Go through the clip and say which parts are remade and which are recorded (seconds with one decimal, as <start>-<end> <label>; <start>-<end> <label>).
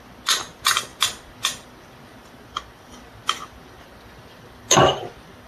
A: 0.0-5.5 recorded